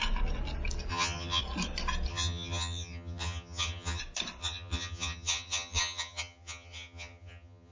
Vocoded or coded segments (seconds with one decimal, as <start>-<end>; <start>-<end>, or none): 0.9-1.4; 2.1-4.0; 4.4-7.7

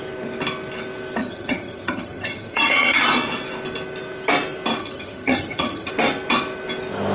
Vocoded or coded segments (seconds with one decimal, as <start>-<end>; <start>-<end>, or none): 1.2-3.0; 4.8-5.9

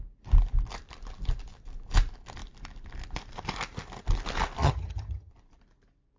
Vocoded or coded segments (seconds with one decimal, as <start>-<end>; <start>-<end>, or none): 4.6-5.3